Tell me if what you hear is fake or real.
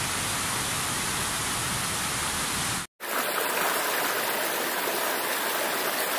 real